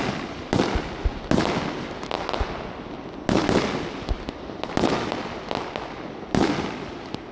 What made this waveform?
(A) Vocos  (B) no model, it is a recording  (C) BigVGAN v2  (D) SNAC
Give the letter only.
B